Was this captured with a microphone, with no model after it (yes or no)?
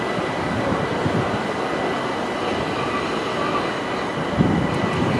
yes